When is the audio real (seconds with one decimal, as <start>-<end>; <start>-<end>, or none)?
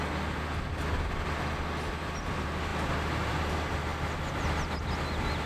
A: 0.0-5.5